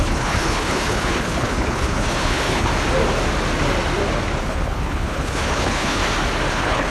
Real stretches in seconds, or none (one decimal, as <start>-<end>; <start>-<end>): 2.7-4.4; 6.0-6.5